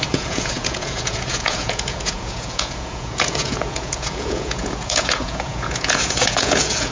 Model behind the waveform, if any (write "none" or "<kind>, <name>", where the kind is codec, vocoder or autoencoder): vocoder, Vocos